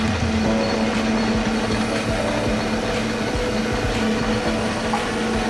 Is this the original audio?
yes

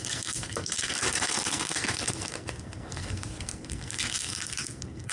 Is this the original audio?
no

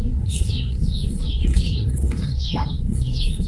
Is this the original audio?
no